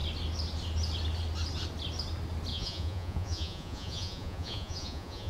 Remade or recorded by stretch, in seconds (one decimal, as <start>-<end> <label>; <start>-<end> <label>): 0.0-2.5 recorded; 2.5-5.3 remade